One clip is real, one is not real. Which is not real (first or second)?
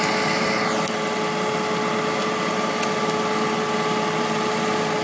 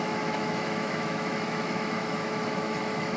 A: second